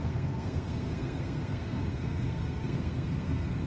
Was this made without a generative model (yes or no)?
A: no